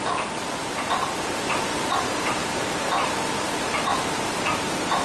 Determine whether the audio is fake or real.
fake